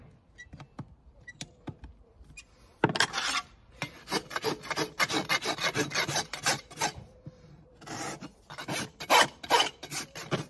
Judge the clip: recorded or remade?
recorded